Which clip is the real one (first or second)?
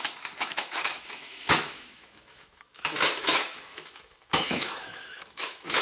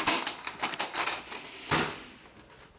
second